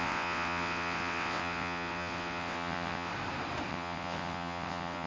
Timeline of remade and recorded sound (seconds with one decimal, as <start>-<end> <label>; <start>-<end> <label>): 0.0-3.1 remade; 3.1-3.7 recorded; 3.7-5.1 remade